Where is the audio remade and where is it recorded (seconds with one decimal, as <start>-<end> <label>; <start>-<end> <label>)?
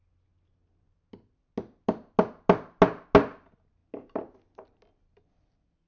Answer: 0.0-5.9 recorded